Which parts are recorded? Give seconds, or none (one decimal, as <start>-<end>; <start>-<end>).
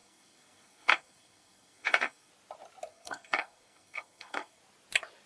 2.3-2.9; 4.6-5.3